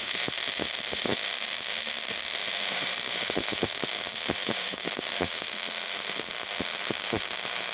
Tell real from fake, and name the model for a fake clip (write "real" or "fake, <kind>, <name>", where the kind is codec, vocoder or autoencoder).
fake, autoencoder, DAC-VAE